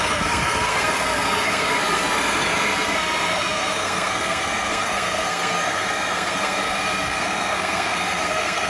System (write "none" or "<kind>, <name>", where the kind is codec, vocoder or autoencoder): codec, SNAC